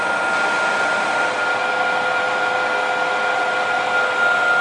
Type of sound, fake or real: real